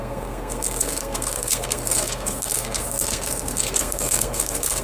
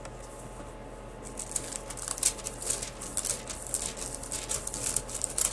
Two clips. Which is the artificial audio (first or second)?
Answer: first